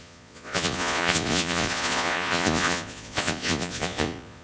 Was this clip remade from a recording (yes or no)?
yes